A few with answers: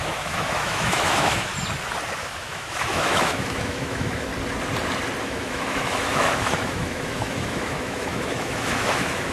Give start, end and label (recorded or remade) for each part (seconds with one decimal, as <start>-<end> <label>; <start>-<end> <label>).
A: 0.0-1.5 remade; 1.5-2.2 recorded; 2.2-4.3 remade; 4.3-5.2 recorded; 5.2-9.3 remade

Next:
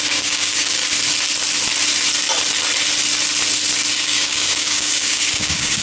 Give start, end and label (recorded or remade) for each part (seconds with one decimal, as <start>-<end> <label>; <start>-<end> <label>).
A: 0.0-0.8 remade; 0.8-3.9 recorded; 3.9-5.8 remade

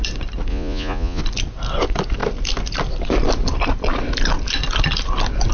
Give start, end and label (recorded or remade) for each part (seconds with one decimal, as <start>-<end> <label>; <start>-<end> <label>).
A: 0.0-0.5 recorded; 0.5-1.2 remade; 1.2-5.5 recorded